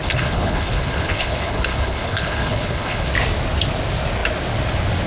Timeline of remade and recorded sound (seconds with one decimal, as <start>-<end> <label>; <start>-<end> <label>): 0.0-3.1 remade; 3.1-5.1 recorded